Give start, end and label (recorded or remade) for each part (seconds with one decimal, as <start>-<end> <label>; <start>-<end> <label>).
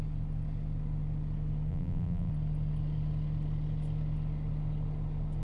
0.0-1.7 recorded; 1.7-2.3 remade; 2.3-5.4 recorded